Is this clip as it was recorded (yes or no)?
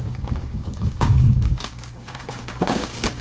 no